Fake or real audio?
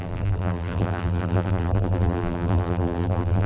fake